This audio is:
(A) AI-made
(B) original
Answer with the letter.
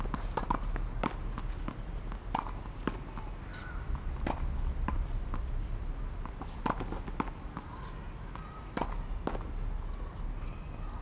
B